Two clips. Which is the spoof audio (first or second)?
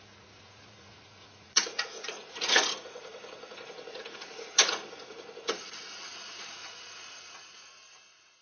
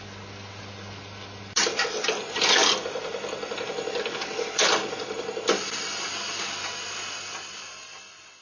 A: first